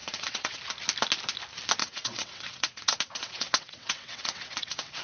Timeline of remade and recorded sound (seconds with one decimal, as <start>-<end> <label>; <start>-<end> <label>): 0.0-0.6 remade; 0.6-1.8 recorded; 1.8-5.0 remade